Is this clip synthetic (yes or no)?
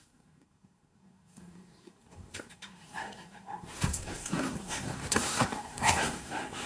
yes